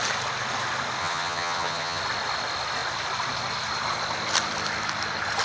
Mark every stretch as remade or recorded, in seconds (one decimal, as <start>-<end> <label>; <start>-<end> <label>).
0.0-1.0 recorded; 1.0-2.0 remade; 2.0-5.4 recorded